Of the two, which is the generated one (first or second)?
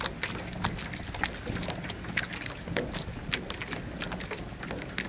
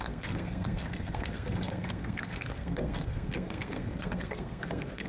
second